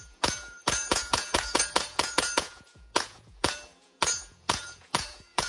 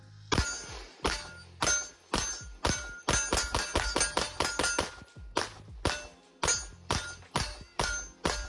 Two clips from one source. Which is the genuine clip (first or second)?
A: second